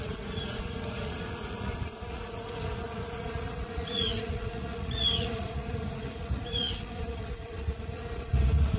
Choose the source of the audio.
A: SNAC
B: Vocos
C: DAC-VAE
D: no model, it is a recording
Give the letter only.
B